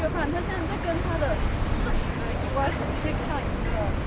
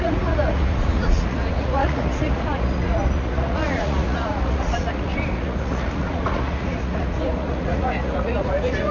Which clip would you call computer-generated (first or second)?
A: second